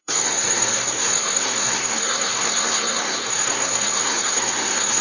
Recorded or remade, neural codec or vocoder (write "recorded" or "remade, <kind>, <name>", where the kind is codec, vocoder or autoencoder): remade, codec, SNAC